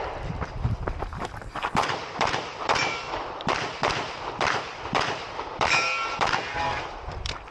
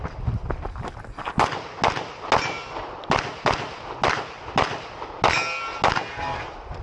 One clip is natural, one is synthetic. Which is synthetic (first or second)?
first